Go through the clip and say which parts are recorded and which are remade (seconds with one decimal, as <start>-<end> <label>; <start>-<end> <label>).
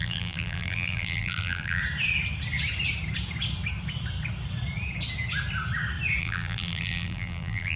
0.0-1.8 remade; 1.8-6.2 recorded; 6.2-7.8 remade